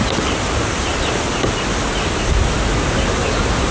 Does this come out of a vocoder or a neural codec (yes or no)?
no